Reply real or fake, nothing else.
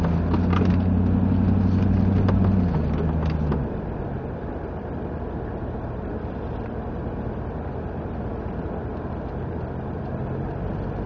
real